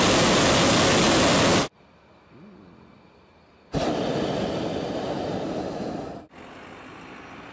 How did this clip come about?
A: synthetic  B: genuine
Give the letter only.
B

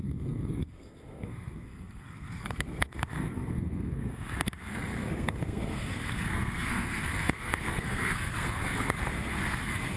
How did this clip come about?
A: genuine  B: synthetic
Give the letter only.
B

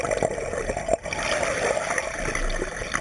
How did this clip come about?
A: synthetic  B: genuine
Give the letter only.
B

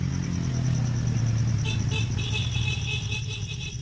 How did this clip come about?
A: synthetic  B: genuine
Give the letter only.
B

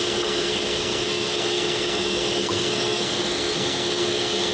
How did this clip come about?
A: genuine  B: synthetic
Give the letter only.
B